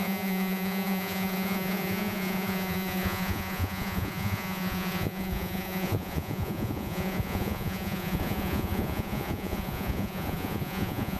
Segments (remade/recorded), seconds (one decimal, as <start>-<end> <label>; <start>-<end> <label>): 0.0-11.2 remade